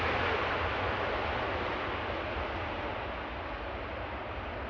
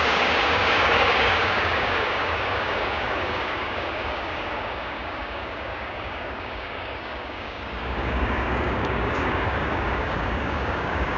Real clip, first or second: first